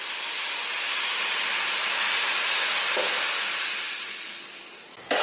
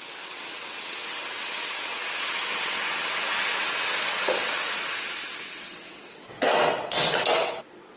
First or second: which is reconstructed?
second